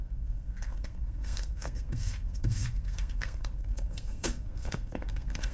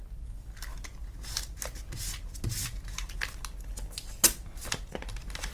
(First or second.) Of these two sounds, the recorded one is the second